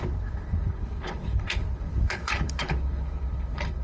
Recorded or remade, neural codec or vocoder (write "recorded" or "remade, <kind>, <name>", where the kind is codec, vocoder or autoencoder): remade, codec, HILCodec